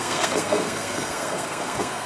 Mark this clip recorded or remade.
remade